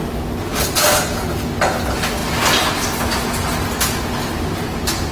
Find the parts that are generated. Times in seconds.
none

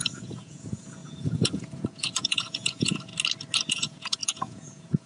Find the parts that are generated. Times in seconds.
0.0-3.1 (vocoder, Vocos); 3.7-5.1